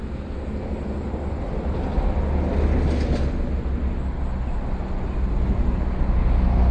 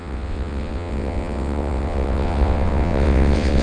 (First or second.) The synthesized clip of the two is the second